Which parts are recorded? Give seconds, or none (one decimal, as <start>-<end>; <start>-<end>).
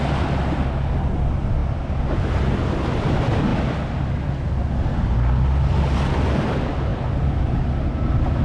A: 0.0-8.4